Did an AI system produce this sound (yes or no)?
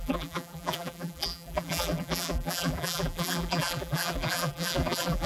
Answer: yes